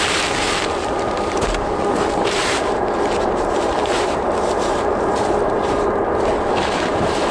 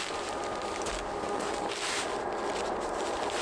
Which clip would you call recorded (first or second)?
second